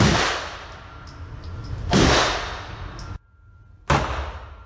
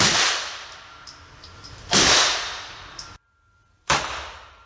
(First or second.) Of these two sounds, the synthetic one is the second